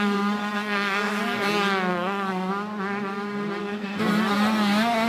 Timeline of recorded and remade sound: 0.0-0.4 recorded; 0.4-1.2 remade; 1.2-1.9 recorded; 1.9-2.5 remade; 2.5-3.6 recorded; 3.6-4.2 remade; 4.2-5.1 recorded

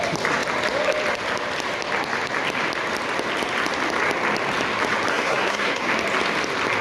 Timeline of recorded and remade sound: 0.0-5.1 recorded; 5.1-5.9 remade; 5.9-6.8 recorded

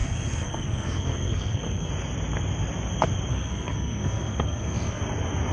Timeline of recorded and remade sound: 0.0-1.9 remade; 1.9-3.3 recorded; 3.3-5.0 remade; 5.0-5.5 recorded